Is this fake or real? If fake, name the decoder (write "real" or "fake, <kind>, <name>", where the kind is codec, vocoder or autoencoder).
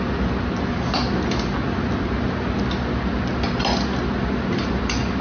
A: real